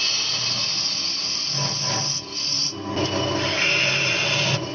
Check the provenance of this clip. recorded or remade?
recorded